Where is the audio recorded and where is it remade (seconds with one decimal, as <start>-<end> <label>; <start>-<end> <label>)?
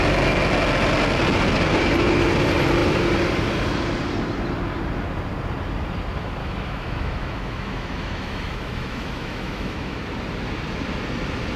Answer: 0.0-6.4 recorded; 6.4-10.0 remade; 10.0-11.6 recorded